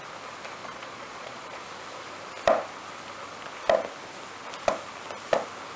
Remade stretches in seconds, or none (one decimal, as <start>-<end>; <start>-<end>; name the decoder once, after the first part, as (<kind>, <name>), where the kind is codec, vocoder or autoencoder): 0.6-1.6 (vocoder, Vocos)